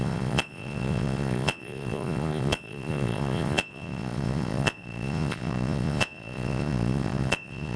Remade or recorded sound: remade